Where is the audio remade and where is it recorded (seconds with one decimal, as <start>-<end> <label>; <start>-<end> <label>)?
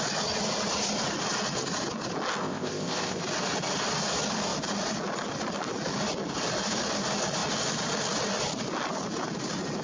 0.0-2.4 recorded; 2.4-3.2 remade; 3.2-9.8 recorded